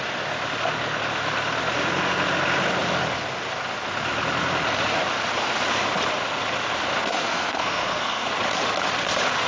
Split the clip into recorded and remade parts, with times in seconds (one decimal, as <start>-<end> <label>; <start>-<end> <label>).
0.0-7.0 recorded; 7.0-8.3 remade; 8.3-9.5 recorded